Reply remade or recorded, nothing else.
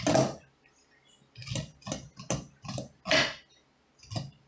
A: recorded